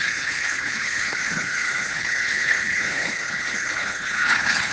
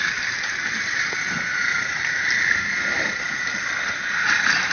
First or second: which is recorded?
second